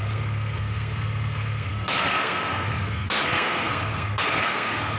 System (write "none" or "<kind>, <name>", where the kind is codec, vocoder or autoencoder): codec, SNAC